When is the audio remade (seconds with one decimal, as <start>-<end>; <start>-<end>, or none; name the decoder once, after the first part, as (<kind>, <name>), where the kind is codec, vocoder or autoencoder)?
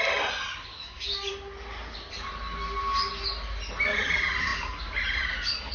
0.7-1.3 (autoencoder, DAC-VAE)